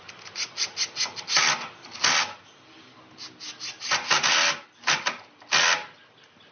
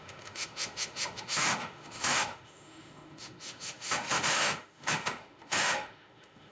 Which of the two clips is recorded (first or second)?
first